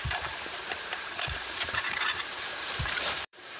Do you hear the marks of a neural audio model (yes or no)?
yes